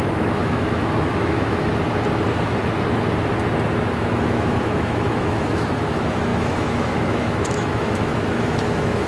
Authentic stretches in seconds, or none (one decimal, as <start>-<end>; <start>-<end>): 1.7-3.9